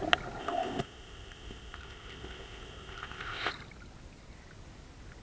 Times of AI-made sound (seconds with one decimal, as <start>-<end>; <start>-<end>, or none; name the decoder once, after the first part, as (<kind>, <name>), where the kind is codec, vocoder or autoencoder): 0.4-3.5 (codec, ZipCodec)